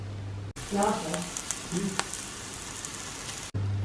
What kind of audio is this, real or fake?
real